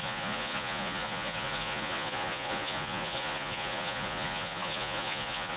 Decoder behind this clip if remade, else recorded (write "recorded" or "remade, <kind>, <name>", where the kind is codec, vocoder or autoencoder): remade, vocoder, Vocos